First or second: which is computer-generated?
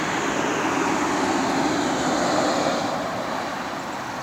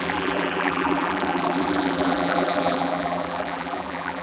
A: second